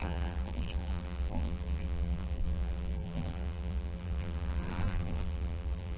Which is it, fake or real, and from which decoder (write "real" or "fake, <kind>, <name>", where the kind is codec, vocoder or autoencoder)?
fake, vocoder, BigVGAN v2